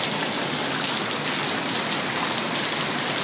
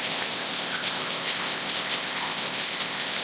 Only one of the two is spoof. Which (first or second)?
second